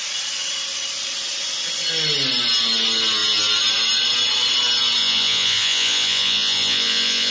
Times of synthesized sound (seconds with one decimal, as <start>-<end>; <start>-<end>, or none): 5.0-7.3